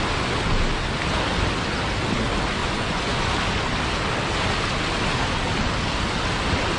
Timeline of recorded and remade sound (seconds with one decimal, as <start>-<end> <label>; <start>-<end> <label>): 0.0-2.6 recorded; 2.6-3.3 remade; 3.3-6.8 recorded